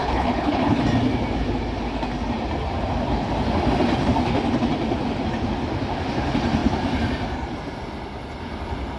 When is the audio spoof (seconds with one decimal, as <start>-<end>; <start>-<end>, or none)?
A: 0.0-0.8